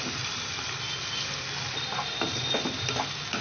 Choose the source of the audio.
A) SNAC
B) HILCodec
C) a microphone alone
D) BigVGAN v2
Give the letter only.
C